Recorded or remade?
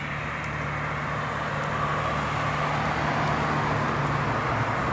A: recorded